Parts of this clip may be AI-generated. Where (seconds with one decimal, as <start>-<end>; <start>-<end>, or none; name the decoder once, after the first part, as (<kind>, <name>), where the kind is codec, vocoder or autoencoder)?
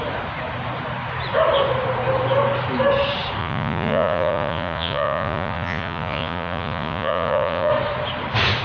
3.4-7.7 (vocoder, Vocos)